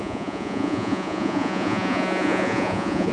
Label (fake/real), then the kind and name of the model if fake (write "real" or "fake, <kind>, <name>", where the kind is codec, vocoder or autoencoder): fake, vocoder, Vocos